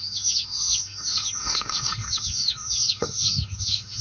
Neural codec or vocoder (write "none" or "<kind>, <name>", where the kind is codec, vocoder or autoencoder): autoencoder, DAC-VAE